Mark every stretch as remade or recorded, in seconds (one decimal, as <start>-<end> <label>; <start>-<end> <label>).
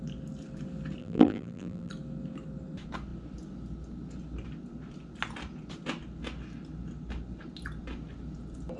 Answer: 0.0-1.0 recorded; 1.0-1.9 remade; 1.9-8.8 recorded